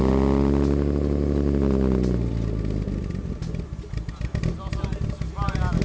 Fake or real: real